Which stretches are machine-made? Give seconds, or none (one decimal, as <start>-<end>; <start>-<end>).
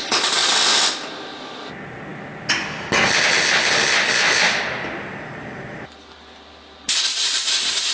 none